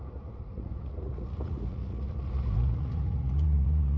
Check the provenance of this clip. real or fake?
fake